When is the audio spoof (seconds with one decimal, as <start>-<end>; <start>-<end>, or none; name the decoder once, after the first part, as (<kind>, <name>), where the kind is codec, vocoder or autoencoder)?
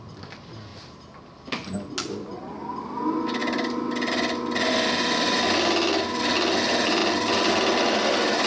none